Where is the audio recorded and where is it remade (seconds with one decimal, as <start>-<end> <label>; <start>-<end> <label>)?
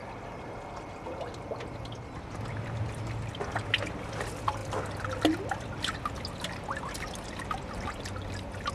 0.0-8.7 recorded